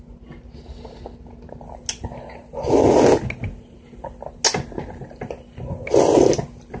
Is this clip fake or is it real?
real